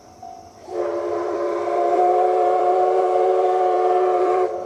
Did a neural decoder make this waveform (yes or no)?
yes